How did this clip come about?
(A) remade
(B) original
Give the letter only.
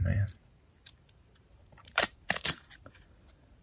A